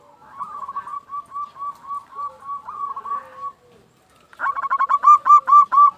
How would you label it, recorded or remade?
recorded